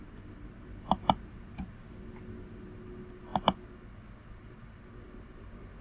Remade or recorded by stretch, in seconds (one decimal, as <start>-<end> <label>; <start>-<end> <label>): 0.0-5.8 recorded

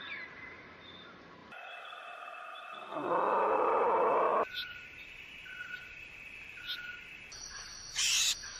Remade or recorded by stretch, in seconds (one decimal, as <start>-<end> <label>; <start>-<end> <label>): 0.0-8.6 recorded

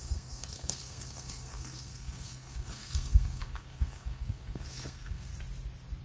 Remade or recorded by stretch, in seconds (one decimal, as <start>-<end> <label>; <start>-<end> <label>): 0.0-5.3 remade; 5.3-6.0 recorded

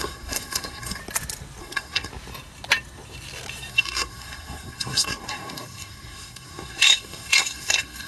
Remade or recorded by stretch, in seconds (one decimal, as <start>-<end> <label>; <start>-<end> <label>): 0.0-1.0 remade; 1.0-1.6 recorded; 1.6-2.1 remade; 2.1-3.7 recorded; 3.7-8.1 remade

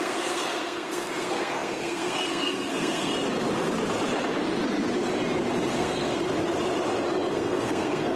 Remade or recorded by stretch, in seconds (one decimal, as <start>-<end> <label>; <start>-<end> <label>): 0.0-3.1 remade; 3.1-5.7 recorded; 5.7-6.2 remade; 6.2-7.3 recorded; 7.3-8.2 remade

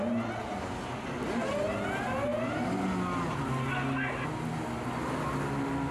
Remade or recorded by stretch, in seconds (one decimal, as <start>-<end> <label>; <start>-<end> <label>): 0.0-5.9 recorded

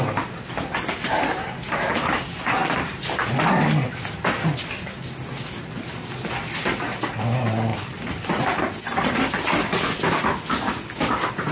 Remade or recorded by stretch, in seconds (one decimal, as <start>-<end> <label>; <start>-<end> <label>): 0.0-2.6 recorded; 2.6-3.6 remade; 3.6-7.7 recorded; 7.7-10.3 remade; 10.3-11.5 recorded